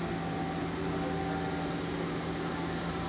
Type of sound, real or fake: real